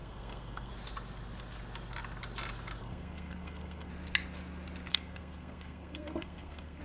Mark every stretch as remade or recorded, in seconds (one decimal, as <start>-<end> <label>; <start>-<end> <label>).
0.0-0.7 remade; 0.7-2.8 recorded; 2.8-3.9 remade; 3.9-4.9 recorded; 4.9-6.8 remade